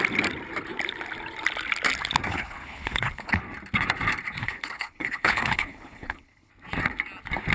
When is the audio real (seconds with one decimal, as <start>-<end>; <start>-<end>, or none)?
0.0-2.3; 3.4-4.4; 6.5-7.5